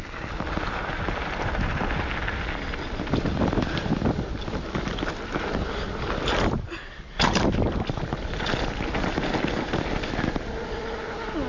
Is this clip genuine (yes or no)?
yes